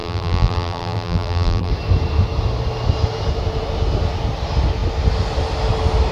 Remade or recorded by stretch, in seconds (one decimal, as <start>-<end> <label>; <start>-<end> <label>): 0.0-1.7 remade; 1.7-6.1 recorded